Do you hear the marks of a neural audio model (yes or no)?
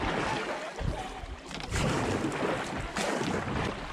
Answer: no